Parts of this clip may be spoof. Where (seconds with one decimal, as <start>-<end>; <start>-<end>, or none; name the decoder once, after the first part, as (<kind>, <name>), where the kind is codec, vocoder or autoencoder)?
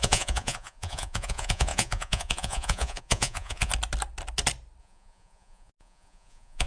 0.0-3.7 (vocoder, Vocos); 4.8-6.7